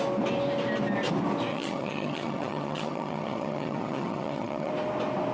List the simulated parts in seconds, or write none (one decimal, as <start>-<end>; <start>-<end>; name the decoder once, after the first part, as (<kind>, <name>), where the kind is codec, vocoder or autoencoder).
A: 1.5-4.7 (vocoder, HiFi-GAN)

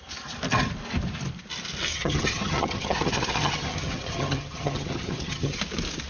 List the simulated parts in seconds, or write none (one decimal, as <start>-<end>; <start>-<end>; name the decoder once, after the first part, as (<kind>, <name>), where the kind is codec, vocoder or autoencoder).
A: 1.9-5.6 (vocoder, HiFi-GAN)